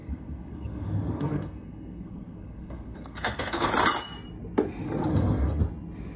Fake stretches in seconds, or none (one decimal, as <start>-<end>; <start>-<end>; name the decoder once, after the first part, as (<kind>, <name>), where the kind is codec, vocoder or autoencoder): 0.0-3.7 (codec, SNAC); 5.1-5.6